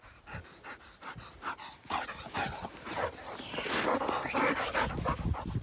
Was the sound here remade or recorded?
recorded